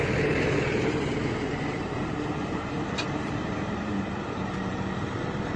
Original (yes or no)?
no